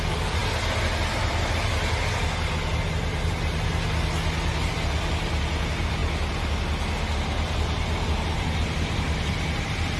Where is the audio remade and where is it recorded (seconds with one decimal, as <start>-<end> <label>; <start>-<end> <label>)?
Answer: 0.0-10.0 recorded